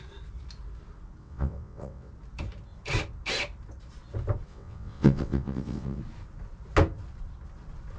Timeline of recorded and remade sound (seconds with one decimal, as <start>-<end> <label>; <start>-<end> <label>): 0.0-1.2 recorded; 1.2-2.1 remade; 2.1-4.5 recorded; 4.5-6.0 remade; 6.0-8.0 recorded